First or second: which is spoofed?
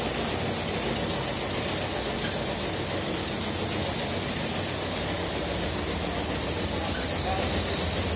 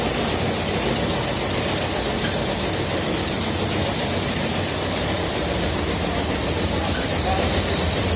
second